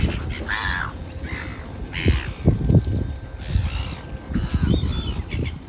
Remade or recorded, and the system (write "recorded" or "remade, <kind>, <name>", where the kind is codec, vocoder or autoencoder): recorded